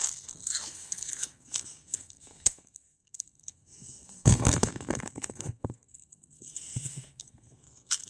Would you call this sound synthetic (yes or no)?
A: yes